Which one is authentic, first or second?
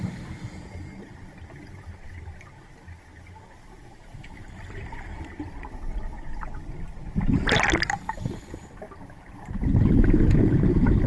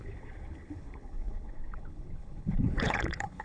first